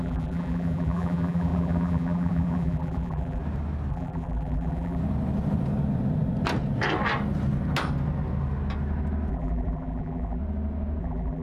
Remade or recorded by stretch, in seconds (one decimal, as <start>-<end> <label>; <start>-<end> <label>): 0.0-3.4 remade; 3.4-3.9 recorded; 3.9-5.0 remade; 5.0-9.3 recorded; 9.3-10.4 remade; 10.4-11.0 recorded; 11.0-11.4 remade